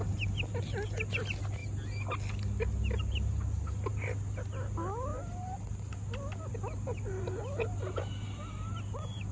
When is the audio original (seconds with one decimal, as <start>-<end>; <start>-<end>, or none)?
0.0-9.3